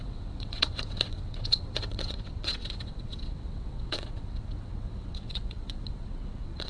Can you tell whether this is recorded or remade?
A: remade